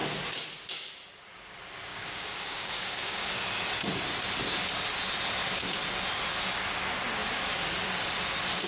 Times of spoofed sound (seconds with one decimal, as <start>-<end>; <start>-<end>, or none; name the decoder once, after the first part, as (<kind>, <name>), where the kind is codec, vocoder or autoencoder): 1.9-3.3 (codec, DAC)